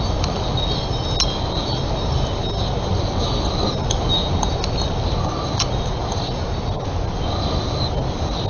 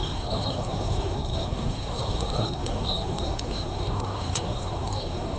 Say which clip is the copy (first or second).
second